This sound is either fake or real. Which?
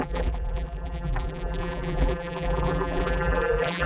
fake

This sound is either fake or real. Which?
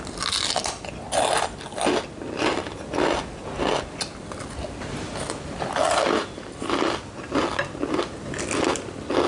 real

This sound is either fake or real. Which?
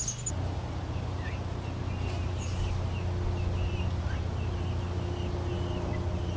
real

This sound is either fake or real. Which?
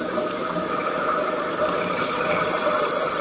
fake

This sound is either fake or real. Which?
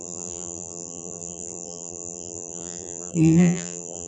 fake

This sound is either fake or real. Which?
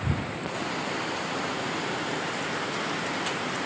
real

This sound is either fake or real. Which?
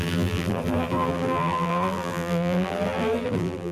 fake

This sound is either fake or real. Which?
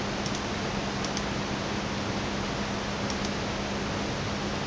real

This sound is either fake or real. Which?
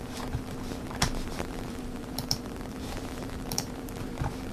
fake